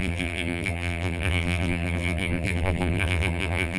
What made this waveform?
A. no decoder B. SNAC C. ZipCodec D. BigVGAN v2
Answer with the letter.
D